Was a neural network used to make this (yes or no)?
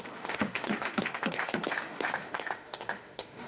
yes